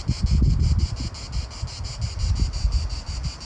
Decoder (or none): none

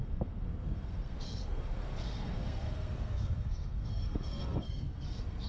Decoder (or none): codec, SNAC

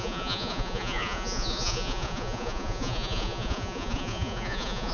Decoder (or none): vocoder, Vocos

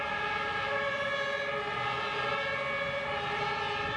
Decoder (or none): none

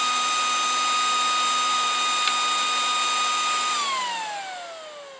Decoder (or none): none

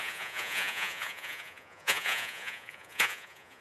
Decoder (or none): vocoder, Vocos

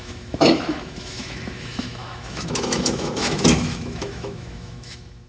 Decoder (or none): autoencoder, DAC-VAE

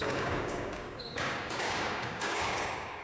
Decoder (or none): codec, DAC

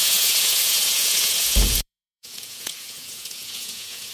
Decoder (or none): vocoder, Vocos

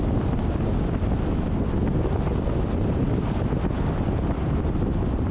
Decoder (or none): none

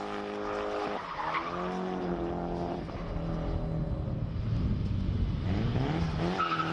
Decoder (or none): none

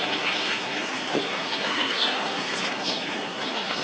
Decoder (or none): codec, SNAC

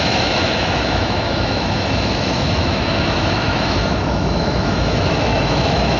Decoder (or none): autoencoder, DAC-VAE